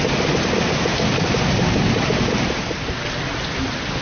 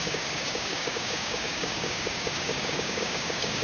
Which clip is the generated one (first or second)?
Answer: second